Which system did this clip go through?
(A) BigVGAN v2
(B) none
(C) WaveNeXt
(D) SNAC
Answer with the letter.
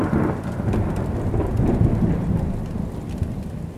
B